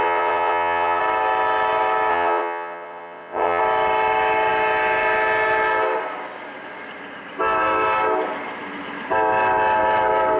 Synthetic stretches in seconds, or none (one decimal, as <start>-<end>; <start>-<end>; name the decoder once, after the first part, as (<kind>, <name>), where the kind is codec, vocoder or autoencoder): 0.0-1.0 (vocoder, WaveNeXt); 2.1-3.6